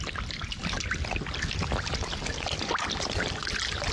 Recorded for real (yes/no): yes